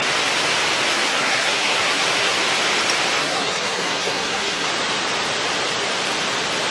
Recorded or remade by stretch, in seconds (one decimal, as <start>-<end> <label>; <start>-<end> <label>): 0.0-0.9 recorded; 0.9-2.4 remade; 2.4-3.2 recorded; 3.2-4.7 remade; 4.7-6.7 recorded